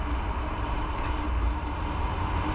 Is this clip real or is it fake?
real